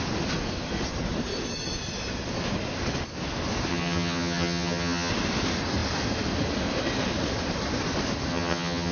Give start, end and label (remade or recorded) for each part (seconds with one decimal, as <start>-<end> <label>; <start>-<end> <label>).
0.0-3.7 recorded; 3.7-5.1 remade; 5.1-8.3 recorded; 8.3-8.9 remade